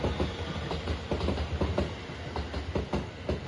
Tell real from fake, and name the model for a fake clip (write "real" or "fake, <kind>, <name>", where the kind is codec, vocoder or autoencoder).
real